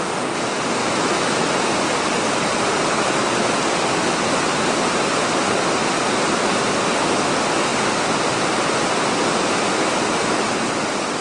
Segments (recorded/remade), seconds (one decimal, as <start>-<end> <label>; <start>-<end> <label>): 0.0-0.8 recorded; 0.8-1.5 remade; 1.5-11.2 recorded